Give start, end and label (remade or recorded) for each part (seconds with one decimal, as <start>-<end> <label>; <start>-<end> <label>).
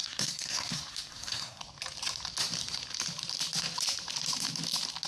0.0-1.6 remade; 1.6-5.1 recorded